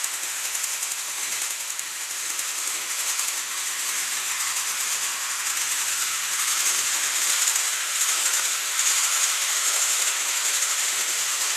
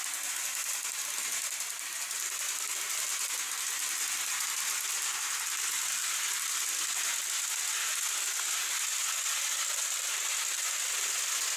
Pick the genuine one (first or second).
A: second